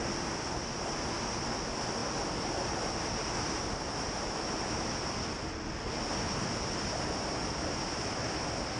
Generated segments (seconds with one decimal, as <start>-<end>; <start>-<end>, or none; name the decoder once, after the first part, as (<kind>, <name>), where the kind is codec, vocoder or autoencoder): none